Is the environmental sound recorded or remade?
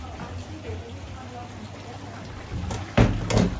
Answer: recorded